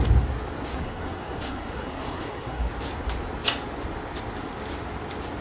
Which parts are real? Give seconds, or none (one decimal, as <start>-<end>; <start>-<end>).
0.0-0.7; 2.7-5.4